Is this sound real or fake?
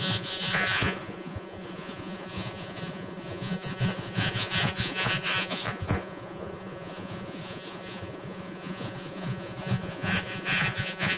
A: fake